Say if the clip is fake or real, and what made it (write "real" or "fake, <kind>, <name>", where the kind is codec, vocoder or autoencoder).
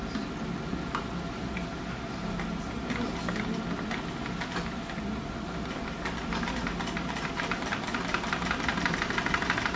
real